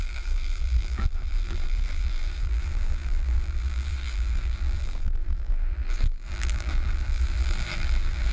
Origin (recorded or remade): remade